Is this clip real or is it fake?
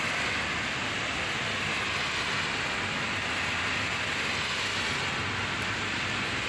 real